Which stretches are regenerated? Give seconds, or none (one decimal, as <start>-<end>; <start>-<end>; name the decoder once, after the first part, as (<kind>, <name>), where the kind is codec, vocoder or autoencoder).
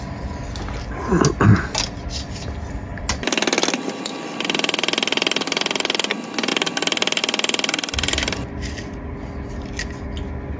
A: none